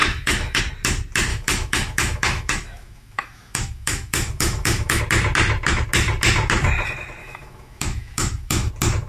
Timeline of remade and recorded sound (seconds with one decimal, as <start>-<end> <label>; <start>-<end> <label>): 0.0-0.6 remade; 0.6-1.3 recorded; 1.3-5.0 remade; 5.0-7.2 recorded; 7.2-8.7 remade; 8.7-9.1 recorded